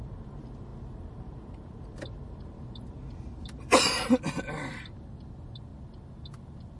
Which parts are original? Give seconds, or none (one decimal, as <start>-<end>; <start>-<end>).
0.0-6.8